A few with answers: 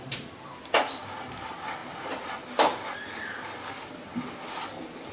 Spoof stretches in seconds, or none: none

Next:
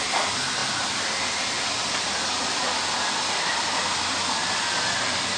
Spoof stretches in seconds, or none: 0.0-5.4 (vocoder, BigVGAN v2)

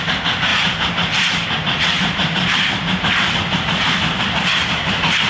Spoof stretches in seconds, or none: 0.5-3.1 (vocoder, BigVGAN v2)

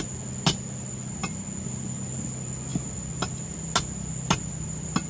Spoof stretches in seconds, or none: none

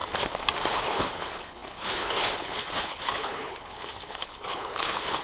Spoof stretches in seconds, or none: 0.7-5.2 (codec, HILCodec)